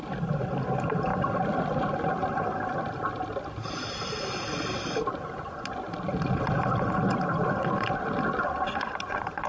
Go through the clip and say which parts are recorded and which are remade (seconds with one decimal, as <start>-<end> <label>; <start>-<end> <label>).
0.0-9.5 recorded